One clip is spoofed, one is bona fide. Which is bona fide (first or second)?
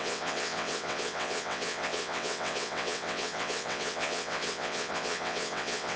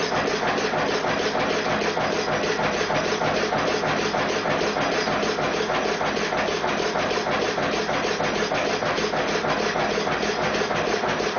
second